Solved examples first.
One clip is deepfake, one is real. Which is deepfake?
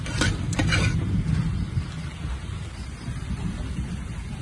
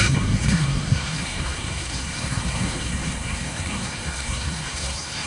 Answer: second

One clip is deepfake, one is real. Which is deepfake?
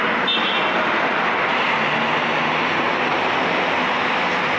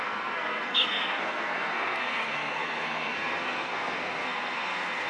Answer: second